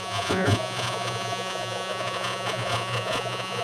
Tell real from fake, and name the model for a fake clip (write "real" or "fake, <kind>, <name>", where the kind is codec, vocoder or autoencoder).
fake, vocoder, Vocos